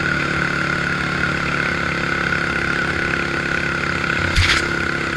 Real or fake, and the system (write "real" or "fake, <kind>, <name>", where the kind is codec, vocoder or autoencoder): real